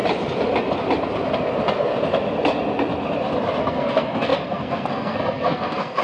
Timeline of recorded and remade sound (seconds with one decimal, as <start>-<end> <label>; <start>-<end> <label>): 0.0-3.6 recorded; 3.6-6.0 remade